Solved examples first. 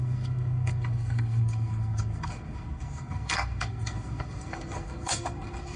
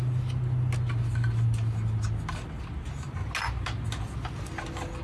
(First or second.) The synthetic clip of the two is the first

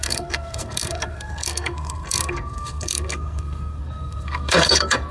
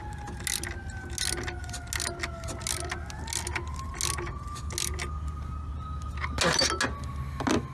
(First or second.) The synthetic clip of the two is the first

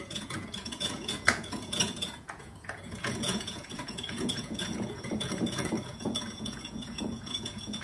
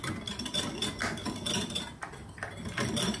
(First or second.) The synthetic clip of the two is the first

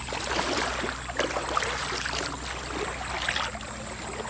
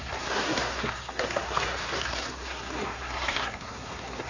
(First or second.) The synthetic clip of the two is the second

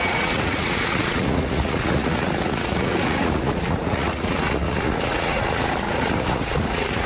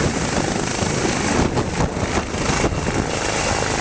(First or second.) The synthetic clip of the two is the first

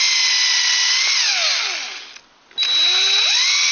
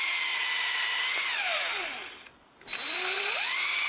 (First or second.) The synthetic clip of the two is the second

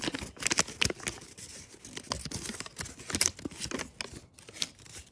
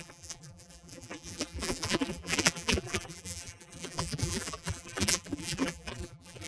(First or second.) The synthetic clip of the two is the second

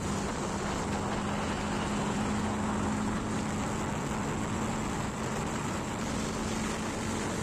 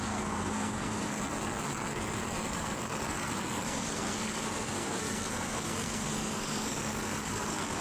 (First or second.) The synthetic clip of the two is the second